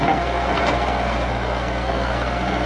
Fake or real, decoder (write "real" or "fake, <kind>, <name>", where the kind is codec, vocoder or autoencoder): fake, codec, SNAC